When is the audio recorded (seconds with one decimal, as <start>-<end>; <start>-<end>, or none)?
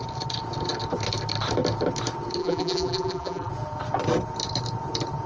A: 0.0-2.4; 3.5-5.3